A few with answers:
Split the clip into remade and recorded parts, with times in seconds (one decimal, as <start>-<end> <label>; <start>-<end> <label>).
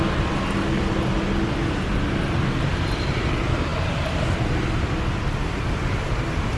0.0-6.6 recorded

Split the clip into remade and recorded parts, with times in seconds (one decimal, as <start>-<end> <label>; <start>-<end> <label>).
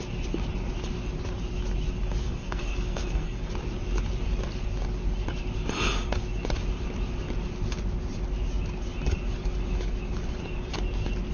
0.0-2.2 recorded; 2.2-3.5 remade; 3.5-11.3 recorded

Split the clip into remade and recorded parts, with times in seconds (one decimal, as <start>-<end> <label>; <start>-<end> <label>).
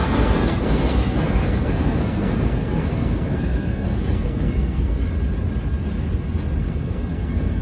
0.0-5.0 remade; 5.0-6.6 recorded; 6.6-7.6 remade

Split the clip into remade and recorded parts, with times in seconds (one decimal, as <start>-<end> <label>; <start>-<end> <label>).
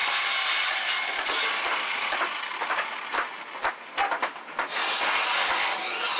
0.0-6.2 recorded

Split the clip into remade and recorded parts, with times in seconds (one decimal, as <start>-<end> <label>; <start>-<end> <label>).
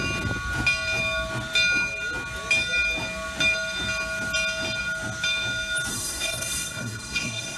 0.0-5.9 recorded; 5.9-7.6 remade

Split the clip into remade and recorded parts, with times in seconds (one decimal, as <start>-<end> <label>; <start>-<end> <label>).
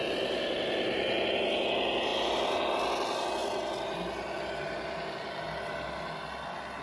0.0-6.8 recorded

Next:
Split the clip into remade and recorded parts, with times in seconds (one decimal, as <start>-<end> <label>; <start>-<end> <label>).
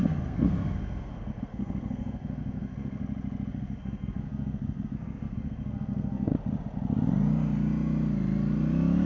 0.0-3.0 remade; 3.0-3.5 recorded; 3.5-6.3 remade; 6.3-9.1 recorded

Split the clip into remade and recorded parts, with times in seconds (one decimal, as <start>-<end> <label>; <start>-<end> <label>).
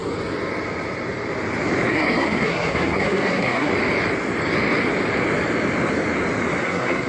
0.0-1.9 recorded; 1.9-3.7 remade; 3.7-6.6 recorded; 6.6-7.1 remade